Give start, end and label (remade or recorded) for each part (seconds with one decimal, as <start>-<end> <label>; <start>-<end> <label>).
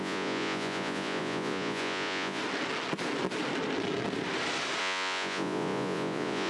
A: 0.0-2.4 remade; 2.4-4.8 recorded; 4.8-6.5 remade